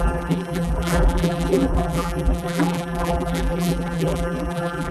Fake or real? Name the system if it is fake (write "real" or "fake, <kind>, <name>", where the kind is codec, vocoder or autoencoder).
fake, vocoder, BigVGAN v2